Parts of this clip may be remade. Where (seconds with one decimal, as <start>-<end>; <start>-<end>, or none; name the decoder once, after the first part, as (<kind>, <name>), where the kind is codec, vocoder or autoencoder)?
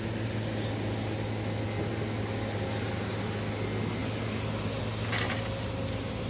none